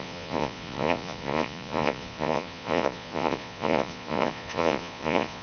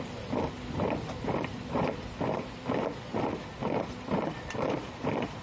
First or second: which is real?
second